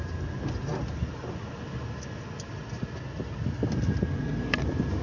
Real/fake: real